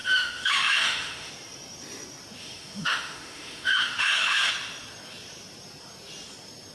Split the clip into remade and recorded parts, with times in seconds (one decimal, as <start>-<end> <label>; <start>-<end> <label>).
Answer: 0.0-1.3 remade; 1.3-2.4 recorded; 2.4-4.5 remade; 4.5-6.7 recorded